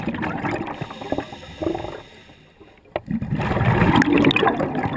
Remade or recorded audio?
recorded